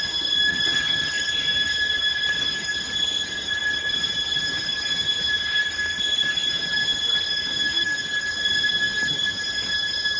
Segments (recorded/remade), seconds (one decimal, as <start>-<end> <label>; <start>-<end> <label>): 0.0-0.5 recorded; 0.5-1.3 remade; 1.3-10.2 recorded